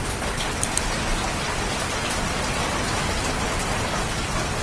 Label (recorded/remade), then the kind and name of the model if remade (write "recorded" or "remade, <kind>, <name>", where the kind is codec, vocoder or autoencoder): recorded